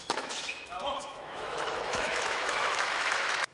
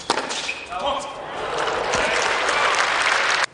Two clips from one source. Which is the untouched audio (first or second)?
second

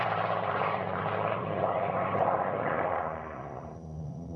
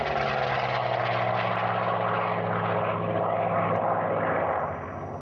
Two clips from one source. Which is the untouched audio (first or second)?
second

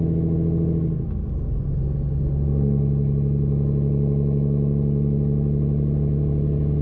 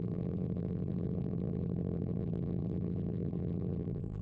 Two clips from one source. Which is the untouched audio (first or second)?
first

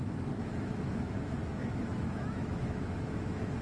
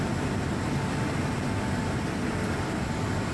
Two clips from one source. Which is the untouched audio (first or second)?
second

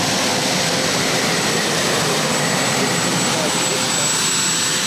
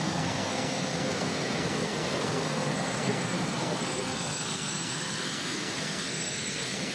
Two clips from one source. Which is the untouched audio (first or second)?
first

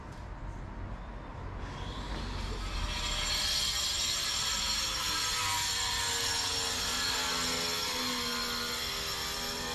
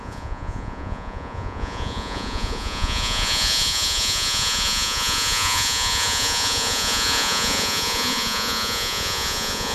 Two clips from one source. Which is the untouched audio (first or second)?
first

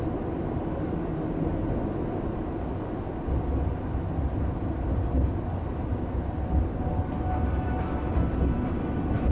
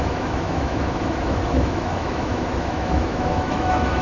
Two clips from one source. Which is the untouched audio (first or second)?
first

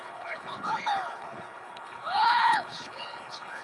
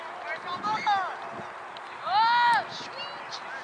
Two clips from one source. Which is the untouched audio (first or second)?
second